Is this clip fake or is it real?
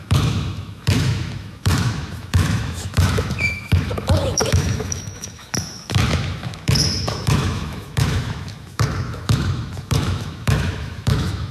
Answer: fake